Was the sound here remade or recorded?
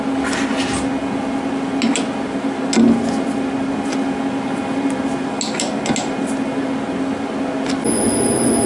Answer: recorded